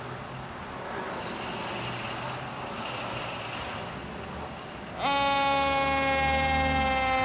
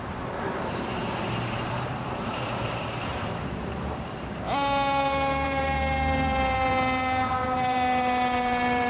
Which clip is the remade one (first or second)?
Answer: second